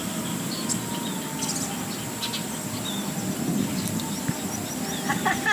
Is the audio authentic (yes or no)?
yes